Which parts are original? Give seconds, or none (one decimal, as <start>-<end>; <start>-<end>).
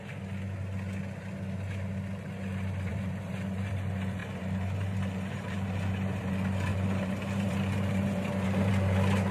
0.0-2.9; 3.7-4.2; 6.3-6.7; 8.7-9.3